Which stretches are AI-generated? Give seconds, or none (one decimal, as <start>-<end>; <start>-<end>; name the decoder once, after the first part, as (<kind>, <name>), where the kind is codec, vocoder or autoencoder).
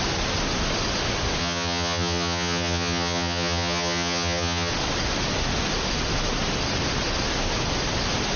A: 1.4-4.7 (vocoder, HiFi-GAN)